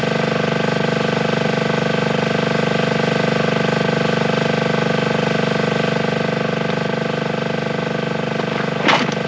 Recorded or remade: recorded